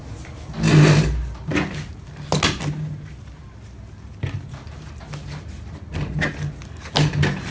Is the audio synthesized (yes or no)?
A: no